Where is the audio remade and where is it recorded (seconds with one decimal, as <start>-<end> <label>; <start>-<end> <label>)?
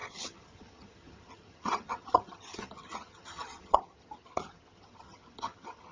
0.0-5.9 remade